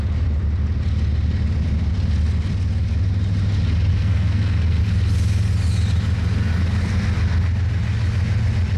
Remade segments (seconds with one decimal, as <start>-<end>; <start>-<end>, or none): 3.9-4.8